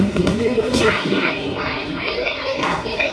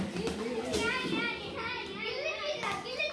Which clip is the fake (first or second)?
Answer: first